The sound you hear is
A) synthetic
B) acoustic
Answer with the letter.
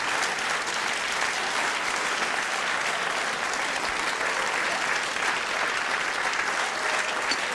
B